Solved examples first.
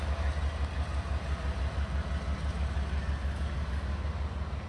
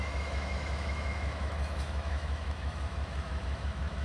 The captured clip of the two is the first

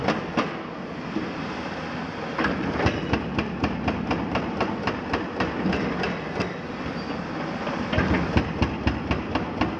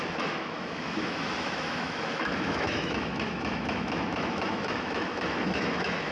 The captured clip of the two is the first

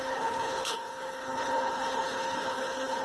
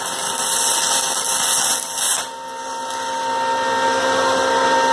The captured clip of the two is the second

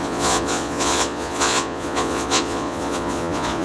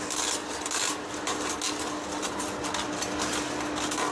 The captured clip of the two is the second